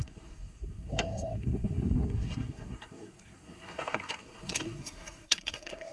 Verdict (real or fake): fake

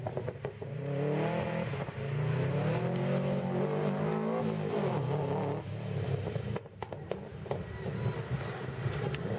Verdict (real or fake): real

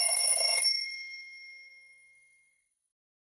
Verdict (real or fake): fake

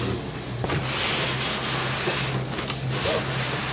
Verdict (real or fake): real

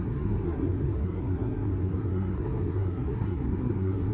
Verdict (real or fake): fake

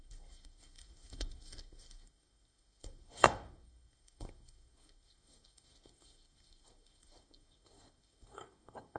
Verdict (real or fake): fake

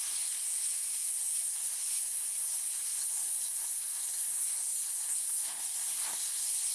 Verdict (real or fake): fake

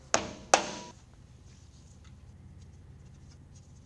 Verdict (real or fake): real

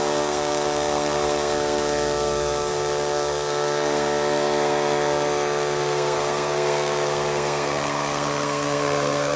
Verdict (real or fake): fake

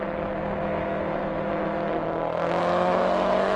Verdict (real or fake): fake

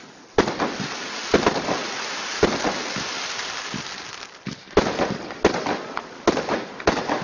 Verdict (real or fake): real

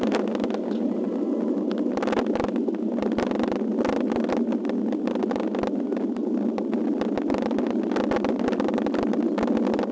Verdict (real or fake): real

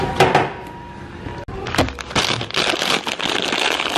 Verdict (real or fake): real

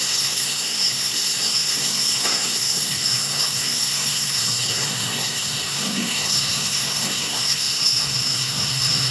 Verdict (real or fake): fake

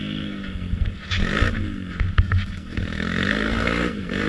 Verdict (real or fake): fake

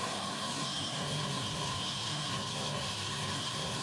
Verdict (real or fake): fake